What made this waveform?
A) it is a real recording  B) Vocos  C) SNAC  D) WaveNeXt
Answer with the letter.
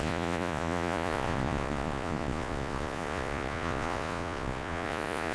B